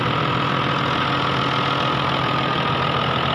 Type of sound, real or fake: real